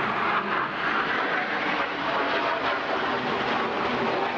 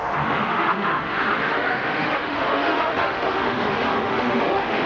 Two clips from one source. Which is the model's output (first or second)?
second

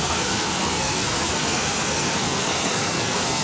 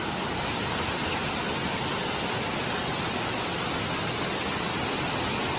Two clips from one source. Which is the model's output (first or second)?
first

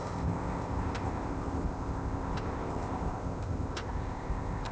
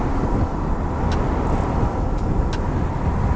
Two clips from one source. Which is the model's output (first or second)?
first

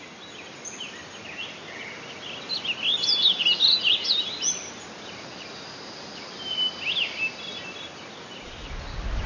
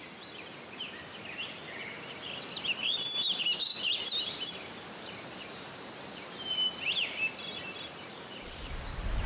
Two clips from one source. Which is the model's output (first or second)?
second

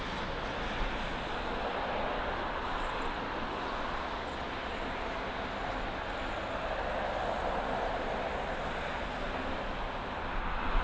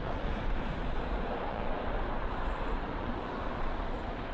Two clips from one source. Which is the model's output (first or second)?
second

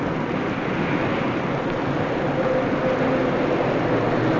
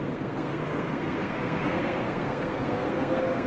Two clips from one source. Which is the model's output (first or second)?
second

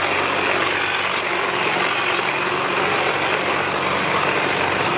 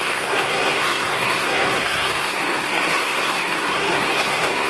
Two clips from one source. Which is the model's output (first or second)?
second